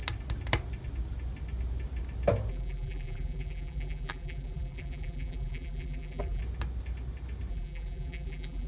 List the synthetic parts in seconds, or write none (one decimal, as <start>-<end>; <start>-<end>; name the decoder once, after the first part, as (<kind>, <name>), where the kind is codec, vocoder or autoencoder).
2.5-6.4 (vocoder, BigVGAN v2); 7.5-8.7